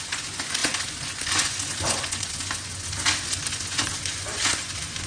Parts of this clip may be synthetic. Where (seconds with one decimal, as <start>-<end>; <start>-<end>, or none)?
0.0-5.1